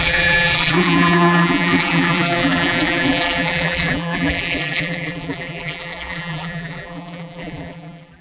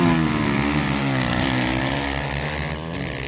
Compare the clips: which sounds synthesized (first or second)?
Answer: first